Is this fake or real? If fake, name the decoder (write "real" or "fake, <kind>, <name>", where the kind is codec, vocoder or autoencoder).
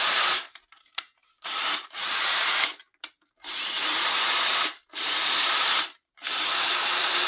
fake, vocoder, BigVGAN v2